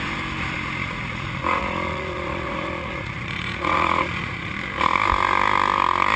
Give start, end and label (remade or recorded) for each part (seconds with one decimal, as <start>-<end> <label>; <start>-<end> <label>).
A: 0.0-0.8 recorded; 0.8-4.5 remade; 4.5-6.2 recorded